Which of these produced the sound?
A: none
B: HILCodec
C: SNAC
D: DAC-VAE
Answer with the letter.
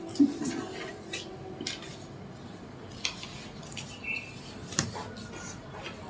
A